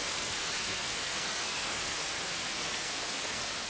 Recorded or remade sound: remade